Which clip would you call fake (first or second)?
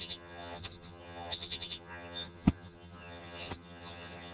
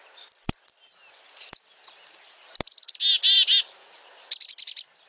first